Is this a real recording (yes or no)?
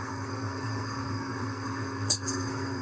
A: no